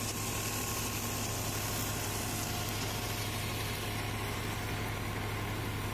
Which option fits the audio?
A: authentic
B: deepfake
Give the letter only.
A